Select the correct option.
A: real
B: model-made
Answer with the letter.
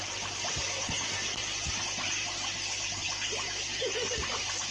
B